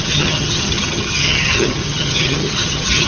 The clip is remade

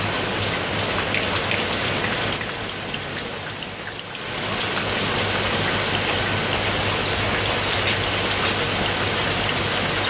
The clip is recorded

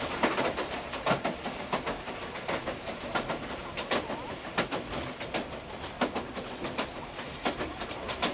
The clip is recorded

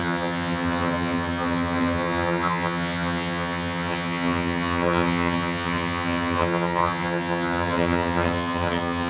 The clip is remade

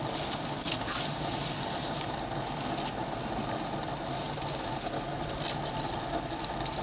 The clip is recorded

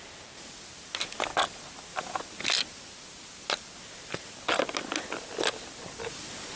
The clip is recorded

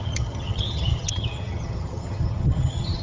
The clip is remade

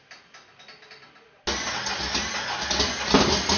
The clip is recorded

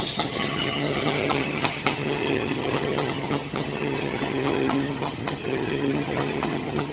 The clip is remade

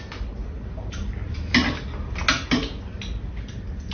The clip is recorded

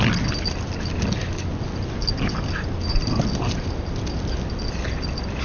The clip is recorded